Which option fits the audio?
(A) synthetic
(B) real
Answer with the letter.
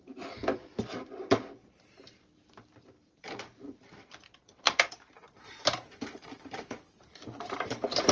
A